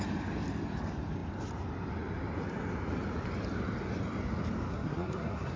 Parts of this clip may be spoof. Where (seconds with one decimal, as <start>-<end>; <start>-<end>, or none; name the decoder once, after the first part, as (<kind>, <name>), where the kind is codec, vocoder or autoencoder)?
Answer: 4.7-5.6 (codec, SNAC)